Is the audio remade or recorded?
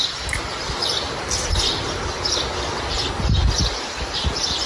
recorded